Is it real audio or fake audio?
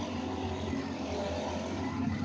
real